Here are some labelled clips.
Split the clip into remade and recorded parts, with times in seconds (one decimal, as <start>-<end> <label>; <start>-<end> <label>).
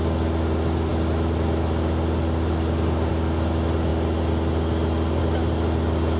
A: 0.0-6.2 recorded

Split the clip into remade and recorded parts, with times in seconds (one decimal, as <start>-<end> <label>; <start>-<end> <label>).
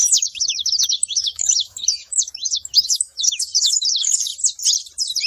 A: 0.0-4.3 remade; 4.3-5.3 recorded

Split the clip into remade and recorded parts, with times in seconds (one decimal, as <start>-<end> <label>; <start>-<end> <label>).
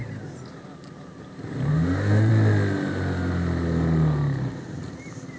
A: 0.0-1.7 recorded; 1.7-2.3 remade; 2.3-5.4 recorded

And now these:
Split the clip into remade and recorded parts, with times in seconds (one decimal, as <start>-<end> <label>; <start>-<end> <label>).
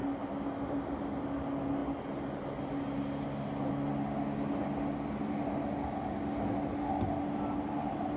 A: 0.0-8.2 recorded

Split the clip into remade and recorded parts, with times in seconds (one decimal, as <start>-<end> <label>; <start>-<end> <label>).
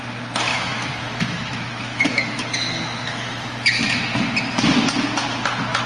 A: 0.0-0.5 recorded; 0.5-4.0 remade; 4.0-5.9 recorded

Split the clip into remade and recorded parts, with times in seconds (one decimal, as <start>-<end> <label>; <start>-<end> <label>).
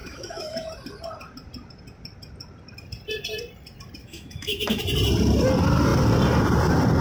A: 0.0-0.7 remade; 0.7-4.0 recorded; 4.0-4.8 remade; 4.8-7.0 recorded